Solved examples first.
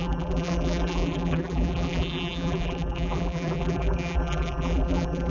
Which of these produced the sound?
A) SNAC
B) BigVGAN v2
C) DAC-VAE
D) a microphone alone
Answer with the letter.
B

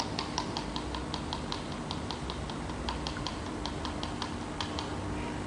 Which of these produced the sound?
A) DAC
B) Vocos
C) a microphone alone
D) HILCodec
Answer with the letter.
C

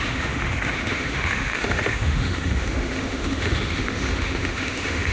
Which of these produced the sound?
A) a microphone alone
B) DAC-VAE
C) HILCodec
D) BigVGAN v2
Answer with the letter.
B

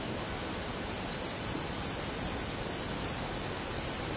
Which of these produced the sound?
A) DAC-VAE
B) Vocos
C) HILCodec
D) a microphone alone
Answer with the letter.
D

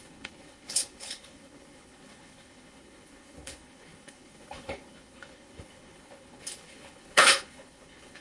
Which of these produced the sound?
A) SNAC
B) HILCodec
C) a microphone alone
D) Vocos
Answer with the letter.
B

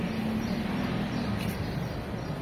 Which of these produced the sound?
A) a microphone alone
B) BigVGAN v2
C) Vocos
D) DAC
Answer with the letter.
A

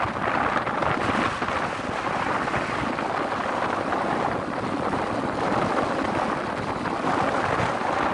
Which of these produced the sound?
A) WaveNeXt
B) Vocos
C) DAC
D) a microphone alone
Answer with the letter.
D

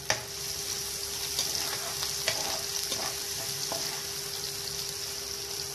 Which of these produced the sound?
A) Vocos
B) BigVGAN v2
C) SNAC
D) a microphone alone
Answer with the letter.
D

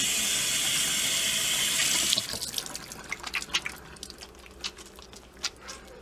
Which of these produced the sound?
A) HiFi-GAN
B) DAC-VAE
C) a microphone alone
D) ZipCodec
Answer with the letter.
C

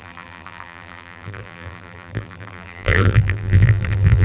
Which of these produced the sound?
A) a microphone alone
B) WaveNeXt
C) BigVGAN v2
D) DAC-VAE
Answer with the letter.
C